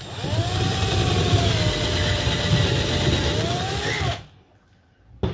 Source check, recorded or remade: recorded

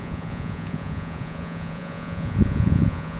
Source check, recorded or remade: remade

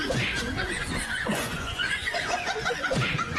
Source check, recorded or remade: remade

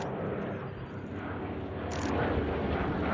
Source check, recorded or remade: recorded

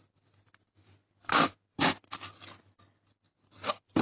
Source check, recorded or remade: recorded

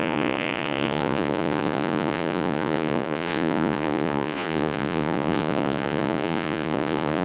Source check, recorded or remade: remade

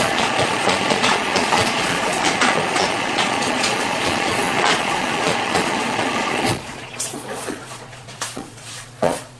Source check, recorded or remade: remade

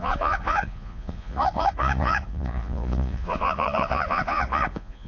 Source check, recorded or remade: remade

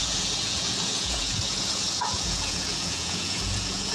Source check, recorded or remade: remade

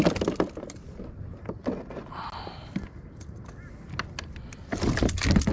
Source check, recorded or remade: recorded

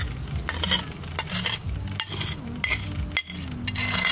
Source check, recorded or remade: recorded